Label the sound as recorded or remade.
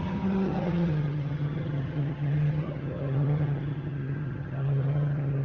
remade